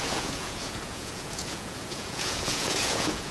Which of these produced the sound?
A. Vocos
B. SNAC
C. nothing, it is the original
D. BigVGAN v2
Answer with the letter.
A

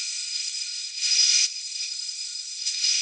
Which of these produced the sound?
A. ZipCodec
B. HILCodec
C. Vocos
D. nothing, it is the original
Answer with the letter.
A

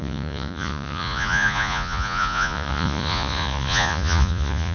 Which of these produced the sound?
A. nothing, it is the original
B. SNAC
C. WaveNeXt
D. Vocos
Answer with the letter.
D